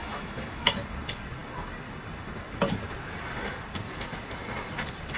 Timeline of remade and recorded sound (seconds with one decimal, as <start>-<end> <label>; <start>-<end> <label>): 0.0-0.7 remade; 0.7-5.2 recorded